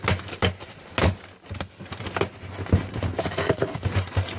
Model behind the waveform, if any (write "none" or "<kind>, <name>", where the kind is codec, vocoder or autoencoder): none